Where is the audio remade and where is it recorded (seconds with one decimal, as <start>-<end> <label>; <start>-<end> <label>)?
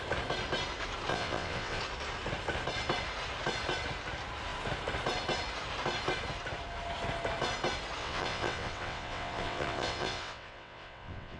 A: 0.0-1.1 recorded; 1.1-1.8 remade; 1.8-8.0 recorded; 8.0-11.4 remade